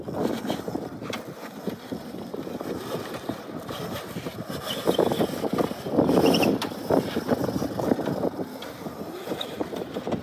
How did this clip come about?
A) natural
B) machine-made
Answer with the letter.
A